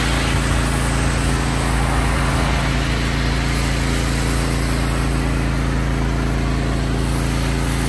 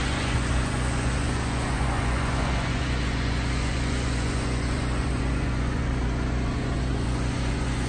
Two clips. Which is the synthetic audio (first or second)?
second